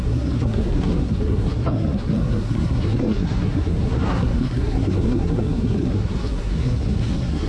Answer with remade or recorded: remade